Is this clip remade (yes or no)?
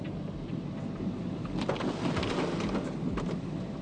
no